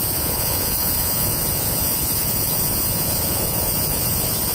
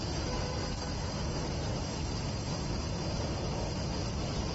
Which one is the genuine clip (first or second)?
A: second